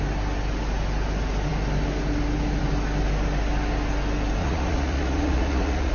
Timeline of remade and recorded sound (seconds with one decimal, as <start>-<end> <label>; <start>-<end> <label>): 0.0-4.4 recorded; 4.4-5.9 remade